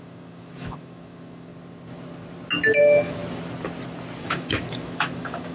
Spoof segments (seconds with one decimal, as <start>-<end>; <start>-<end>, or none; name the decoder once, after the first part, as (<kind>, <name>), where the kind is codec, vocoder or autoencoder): 0.0-1.5 (autoencoder, DAC-VAE); 2.8-3.2; 4.2-5.5